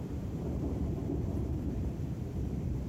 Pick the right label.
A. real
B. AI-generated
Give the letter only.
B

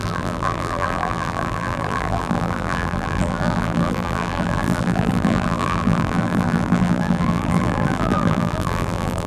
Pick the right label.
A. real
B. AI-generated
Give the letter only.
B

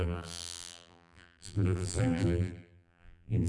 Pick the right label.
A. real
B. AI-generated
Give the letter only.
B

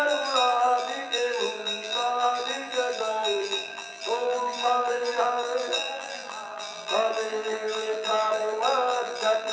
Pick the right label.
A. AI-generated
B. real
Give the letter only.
A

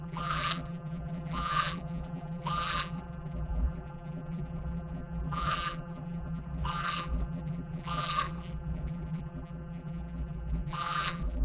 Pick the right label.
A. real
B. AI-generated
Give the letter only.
B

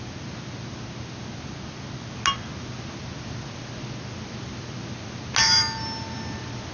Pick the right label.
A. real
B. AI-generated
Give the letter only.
A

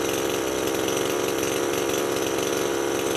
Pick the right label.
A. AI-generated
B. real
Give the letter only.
B